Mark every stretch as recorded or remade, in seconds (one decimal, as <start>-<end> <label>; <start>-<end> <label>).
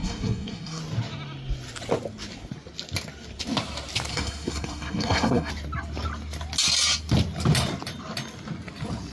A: 0.0-0.8 remade; 0.8-4.1 recorded; 4.1-5.5 remade; 5.5-9.1 recorded